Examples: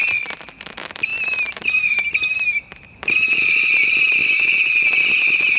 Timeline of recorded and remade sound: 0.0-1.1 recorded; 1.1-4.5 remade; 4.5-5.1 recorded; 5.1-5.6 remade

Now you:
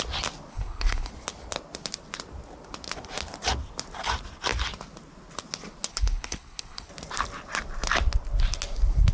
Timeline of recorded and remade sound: 0.0-0.5 recorded; 0.5-1.1 remade; 1.1-5.9 recorded; 5.9-6.9 remade; 6.9-9.1 recorded

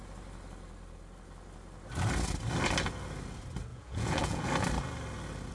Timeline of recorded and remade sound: 0.0-3.7 recorded; 3.7-4.5 remade; 4.5-5.5 recorded

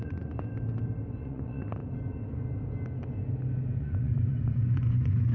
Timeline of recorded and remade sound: 0.0-0.5 remade; 0.5-1.2 recorded; 1.2-1.8 remade; 1.8-3.8 recorded; 3.8-5.3 remade